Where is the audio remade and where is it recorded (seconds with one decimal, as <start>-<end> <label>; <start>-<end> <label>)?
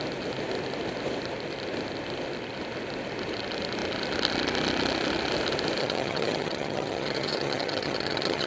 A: 0.0-5.8 recorded; 5.8-8.5 remade